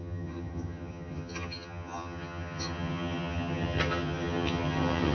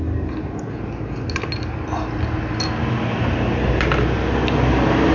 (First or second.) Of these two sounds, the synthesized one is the first